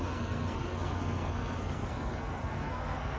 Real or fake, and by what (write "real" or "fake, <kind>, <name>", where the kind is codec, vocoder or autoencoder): fake, codec, SNAC